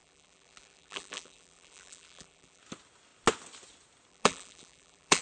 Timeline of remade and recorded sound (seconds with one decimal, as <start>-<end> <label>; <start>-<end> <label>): 0.0-2.6 remade; 2.6-4.1 recorded; 4.1-5.2 remade

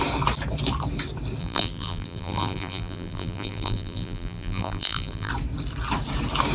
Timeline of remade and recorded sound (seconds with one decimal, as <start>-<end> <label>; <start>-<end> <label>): 0.0-1.4 recorded; 1.4-5.3 remade; 5.3-6.5 recorded

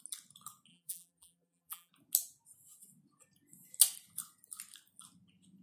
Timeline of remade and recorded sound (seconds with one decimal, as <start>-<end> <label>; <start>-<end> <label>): 0.0-0.7 recorded; 0.7-1.9 remade; 1.9-5.6 recorded

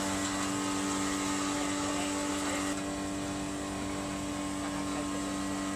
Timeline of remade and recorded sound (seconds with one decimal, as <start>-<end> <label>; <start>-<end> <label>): 0.0-5.8 recorded

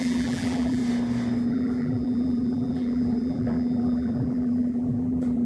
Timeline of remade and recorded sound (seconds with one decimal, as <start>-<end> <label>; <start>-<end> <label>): 0.0-0.8 remade; 0.8-1.5 recorded; 1.5-5.5 remade

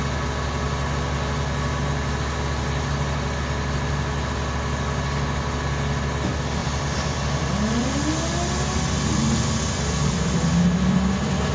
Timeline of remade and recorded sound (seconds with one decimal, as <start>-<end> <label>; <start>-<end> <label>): 0.0-6.6 recorded; 6.6-8.1 remade; 8.1-11.5 recorded

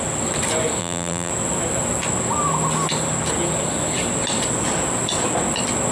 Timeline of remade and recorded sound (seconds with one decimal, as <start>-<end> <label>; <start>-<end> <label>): 0.0-0.8 recorded; 0.8-1.3 remade; 1.3-5.9 recorded

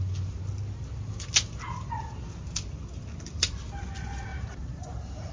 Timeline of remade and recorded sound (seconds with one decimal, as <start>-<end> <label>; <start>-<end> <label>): 0.0-4.3 recorded; 4.3-5.3 remade